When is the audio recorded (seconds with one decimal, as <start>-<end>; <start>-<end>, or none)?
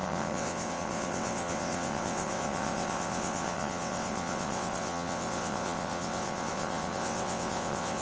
none